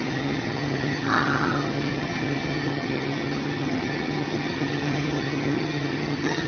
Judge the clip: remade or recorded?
remade